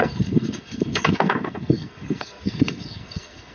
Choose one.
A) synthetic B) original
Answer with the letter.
A